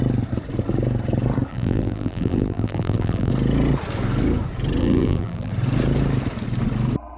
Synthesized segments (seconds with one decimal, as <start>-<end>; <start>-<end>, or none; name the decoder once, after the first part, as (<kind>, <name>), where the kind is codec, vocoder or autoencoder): 1.5-3.3 (vocoder, BigVGAN v2); 4.8-5.5